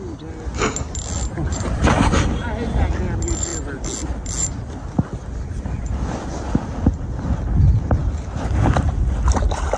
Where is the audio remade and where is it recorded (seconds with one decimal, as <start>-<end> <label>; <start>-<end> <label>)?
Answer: 0.0-1.5 recorded; 1.5-2.3 remade; 2.3-9.8 recorded